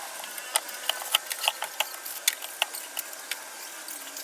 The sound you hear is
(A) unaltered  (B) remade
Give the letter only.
A